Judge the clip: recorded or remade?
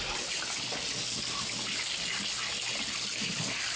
recorded